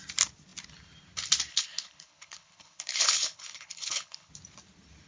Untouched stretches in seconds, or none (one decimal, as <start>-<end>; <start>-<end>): 0.0-1.5; 4.3-5.1